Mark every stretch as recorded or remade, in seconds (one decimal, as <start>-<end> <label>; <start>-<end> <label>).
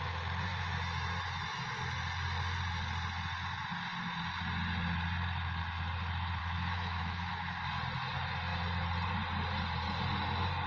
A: 0.0-0.5 recorded; 0.5-1.7 remade; 1.7-6.4 recorded; 6.4-7.3 remade; 7.3-10.7 recorded